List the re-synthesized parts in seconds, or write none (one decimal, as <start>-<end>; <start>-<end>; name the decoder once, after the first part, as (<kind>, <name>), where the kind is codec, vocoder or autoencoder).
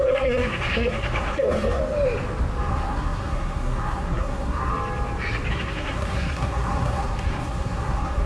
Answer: 0.0-1.8 (codec, SNAC); 2.7-4.7; 5.5-8.3